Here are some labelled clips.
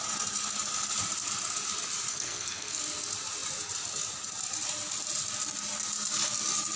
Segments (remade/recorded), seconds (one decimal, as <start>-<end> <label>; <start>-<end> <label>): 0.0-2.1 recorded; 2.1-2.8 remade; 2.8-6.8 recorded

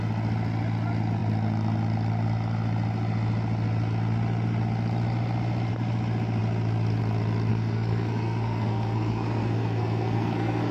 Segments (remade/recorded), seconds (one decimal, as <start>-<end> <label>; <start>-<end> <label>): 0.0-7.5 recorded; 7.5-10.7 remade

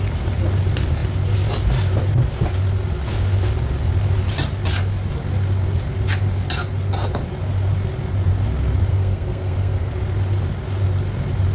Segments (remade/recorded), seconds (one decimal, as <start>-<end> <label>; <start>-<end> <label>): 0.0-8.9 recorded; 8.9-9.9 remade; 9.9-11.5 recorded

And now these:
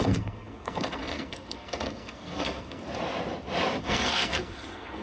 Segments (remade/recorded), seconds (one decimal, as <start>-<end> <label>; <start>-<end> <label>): 0.0-2.8 remade; 2.8-3.8 recorded; 3.8-5.0 remade

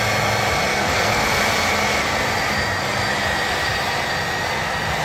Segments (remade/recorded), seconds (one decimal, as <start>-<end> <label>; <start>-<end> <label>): 0.0-0.7 recorded; 0.7-1.4 remade; 1.4-5.0 recorded

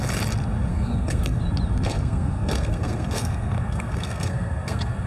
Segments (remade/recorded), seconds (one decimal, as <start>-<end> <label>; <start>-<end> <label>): 0.0-0.7 recorded; 0.7-1.4 remade; 1.4-1.9 recorded; 1.9-5.1 remade

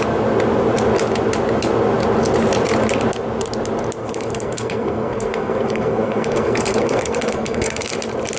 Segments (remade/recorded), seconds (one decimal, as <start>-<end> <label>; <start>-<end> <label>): 0.0-4.0 recorded; 4.0-8.0 remade; 8.0-8.4 recorded

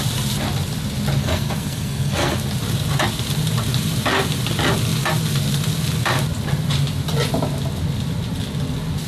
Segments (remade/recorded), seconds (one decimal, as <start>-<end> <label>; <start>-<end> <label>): 0.0-1.2 recorded; 1.2-2.4 remade; 2.4-9.1 recorded